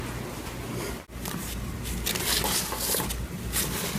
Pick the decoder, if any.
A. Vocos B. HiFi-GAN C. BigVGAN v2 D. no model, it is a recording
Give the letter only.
D